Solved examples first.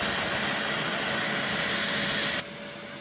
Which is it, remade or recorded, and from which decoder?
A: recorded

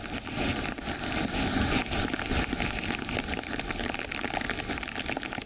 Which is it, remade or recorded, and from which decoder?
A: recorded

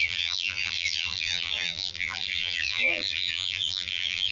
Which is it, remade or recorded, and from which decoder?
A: remade, vocoder, BigVGAN v2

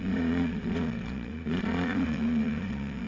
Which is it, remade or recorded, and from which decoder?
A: remade, vocoder, Vocos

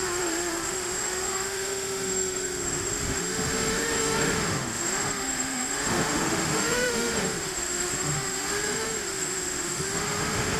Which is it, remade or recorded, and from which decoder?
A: remade, autoencoder, DAC-VAE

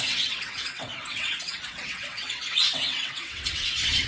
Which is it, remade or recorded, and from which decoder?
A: remade, vocoder, WaveNeXt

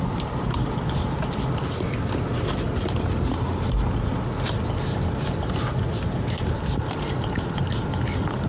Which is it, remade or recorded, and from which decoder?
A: recorded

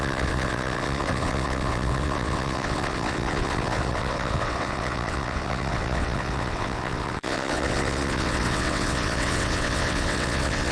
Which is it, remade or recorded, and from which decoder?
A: remade, vocoder, WaveNeXt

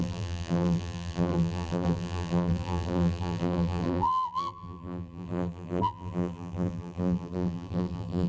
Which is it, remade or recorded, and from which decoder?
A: remade, vocoder, BigVGAN v2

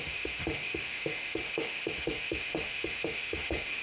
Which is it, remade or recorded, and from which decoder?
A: remade, autoencoder, DAC-VAE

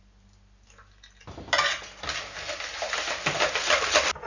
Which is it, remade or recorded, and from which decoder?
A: recorded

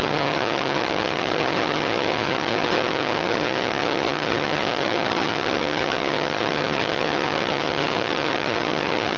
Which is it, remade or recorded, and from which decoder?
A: remade, vocoder, HiFi-GAN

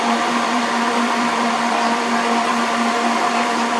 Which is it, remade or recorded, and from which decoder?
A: remade, vocoder, BigVGAN v2